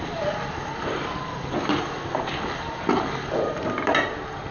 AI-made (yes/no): no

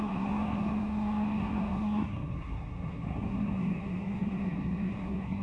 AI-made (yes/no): yes